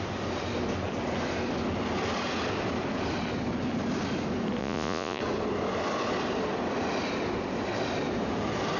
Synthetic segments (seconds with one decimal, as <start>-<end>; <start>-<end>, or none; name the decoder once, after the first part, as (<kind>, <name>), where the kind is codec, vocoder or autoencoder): 4.6-5.2 (vocoder, Vocos)